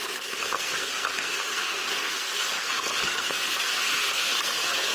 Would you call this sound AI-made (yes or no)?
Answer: yes